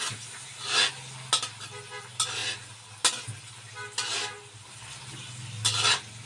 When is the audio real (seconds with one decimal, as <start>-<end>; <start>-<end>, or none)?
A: 0.0-6.3